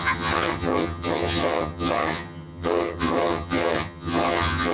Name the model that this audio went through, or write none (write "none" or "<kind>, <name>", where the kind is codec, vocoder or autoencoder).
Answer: vocoder, HiFi-GAN